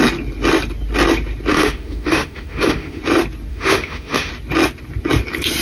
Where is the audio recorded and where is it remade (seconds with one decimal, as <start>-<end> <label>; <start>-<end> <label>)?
0.0-1.5 recorded; 1.5-3.0 remade; 3.0-3.5 recorded; 3.5-4.3 remade; 4.3-5.6 recorded

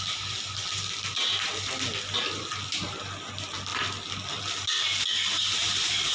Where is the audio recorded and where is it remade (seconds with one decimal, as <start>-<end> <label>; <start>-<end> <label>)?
0.0-6.1 recorded

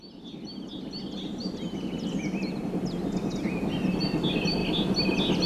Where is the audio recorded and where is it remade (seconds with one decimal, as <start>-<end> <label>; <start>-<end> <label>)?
0.0-5.5 recorded

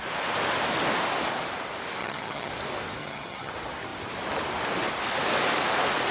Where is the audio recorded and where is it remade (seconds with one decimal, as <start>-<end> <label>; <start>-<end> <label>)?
0.0-2.0 recorded; 2.0-2.5 remade; 2.5-3.0 recorded; 3.0-3.5 remade; 3.5-6.1 recorded